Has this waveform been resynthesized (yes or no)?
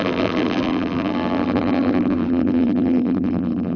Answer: yes